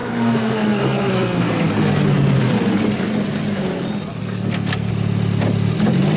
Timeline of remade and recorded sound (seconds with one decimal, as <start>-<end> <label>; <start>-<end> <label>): 0.0-1.7 remade; 1.7-4.2 recorded; 4.2-4.9 remade; 4.9-6.2 recorded